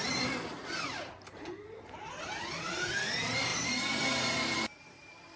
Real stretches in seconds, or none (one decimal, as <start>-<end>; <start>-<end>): none